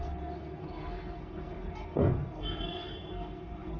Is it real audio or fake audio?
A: fake